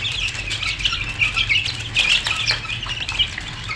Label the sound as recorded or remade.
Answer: recorded